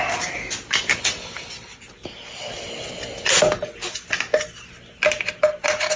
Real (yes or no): yes